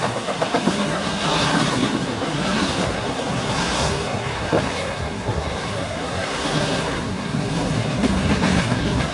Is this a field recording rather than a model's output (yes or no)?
no